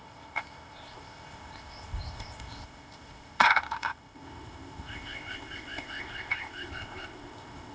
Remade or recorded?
remade